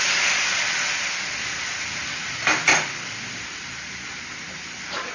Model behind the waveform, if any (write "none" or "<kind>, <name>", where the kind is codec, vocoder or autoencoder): none